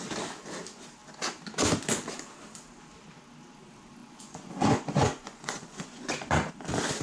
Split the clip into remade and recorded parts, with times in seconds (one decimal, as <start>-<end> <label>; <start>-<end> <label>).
0.0-4.0 recorded; 4.0-6.5 remade; 6.5-7.0 recorded